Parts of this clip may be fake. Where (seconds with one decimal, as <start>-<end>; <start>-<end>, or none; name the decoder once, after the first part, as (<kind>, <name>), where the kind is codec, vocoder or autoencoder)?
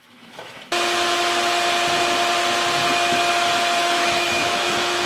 0.0-0.7 (autoencoder, DAC-VAE); 3.8-5.1